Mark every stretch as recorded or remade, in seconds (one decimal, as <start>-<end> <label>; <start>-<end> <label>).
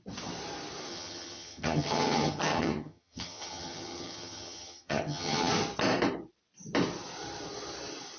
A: 0.0-0.9 recorded; 0.9-5.5 remade; 5.5-8.2 recorded